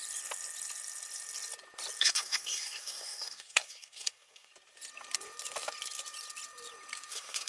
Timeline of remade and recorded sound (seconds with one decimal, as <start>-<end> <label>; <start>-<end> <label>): 0.0-2.0 recorded; 2.0-4.5 remade; 4.5-7.1 recorded; 7.1-7.5 remade